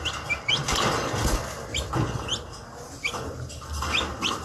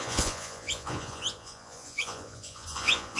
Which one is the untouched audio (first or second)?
first